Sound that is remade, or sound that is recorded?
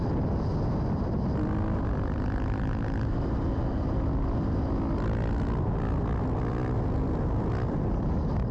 recorded